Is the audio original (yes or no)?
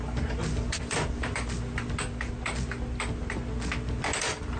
yes